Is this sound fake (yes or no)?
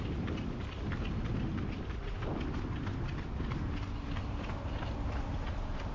no